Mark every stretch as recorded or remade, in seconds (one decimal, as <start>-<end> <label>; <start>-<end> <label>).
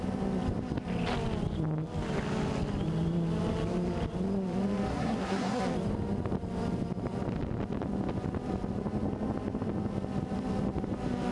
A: 0.0-4.9 recorded; 4.9-5.6 remade; 5.6-11.3 recorded